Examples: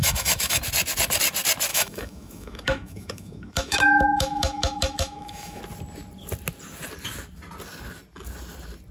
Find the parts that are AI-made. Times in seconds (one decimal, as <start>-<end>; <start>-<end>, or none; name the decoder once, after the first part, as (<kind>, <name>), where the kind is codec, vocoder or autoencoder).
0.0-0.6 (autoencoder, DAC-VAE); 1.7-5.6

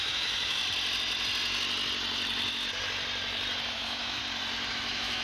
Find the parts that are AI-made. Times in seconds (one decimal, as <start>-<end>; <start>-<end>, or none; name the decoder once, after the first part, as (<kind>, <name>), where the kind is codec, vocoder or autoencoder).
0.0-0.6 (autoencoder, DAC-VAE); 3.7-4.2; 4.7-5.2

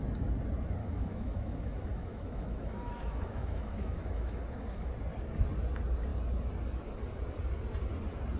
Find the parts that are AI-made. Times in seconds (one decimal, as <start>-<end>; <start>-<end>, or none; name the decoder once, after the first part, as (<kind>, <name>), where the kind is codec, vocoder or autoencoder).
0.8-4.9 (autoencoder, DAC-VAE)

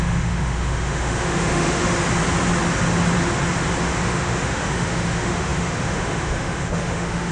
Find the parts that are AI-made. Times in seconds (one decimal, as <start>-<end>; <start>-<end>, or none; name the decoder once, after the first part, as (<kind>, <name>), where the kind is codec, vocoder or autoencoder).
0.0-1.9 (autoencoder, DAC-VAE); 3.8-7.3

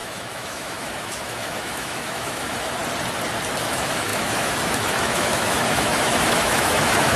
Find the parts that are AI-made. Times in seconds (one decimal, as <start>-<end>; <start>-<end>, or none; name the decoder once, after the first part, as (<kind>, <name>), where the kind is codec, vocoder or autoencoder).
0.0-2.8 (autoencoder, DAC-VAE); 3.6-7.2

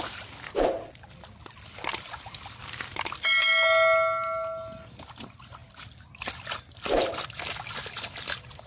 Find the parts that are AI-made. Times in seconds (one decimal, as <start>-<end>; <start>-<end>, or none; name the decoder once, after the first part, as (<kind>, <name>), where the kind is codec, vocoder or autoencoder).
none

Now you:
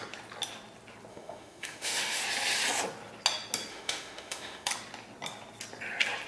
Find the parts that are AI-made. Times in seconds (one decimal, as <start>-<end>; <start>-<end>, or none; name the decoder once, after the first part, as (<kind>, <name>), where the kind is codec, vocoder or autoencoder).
1.1-2.2 (autoencoder, DAC-VAE); 3.7-4.7

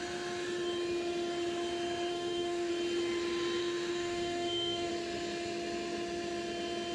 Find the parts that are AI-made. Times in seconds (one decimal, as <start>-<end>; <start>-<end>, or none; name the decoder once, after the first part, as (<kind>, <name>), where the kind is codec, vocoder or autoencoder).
2.1-2.7 (autoencoder, DAC-VAE); 3.6-4.9